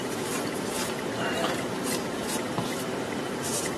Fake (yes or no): yes